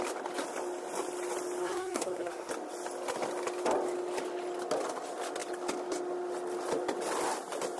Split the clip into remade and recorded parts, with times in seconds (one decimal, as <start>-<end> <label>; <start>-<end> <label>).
0.0-1.6 recorded; 1.6-2.5 remade; 2.5-7.8 recorded

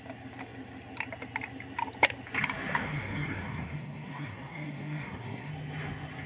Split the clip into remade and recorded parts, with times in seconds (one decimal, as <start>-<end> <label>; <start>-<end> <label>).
0.0-2.8 recorded; 2.8-5.5 remade; 5.5-6.3 recorded

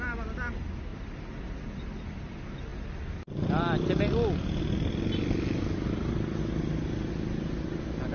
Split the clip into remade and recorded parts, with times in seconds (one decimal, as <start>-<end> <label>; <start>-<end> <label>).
0.0-8.1 recorded

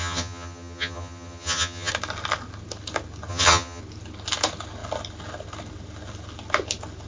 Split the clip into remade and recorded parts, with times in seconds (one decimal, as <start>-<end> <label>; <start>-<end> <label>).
0.0-1.9 remade; 1.9-3.3 recorded; 3.3-3.8 remade; 3.8-7.1 recorded

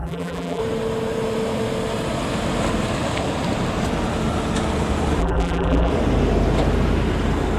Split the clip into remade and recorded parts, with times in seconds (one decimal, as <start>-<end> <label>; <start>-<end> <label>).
0.0-0.6 remade; 0.6-5.2 recorded; 5.2-5.9 remade; 5.9-7.6 recorded

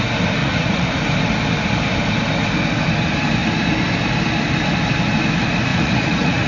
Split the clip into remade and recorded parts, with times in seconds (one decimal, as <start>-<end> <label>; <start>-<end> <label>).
0.0-0.4 recorded; 0.4-0.9 remade; 0.9-5.7 recorded; 5.7-6.5 remade